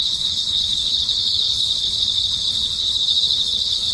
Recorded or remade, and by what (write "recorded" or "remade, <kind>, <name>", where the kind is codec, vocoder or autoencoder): remade, codec, HILCodec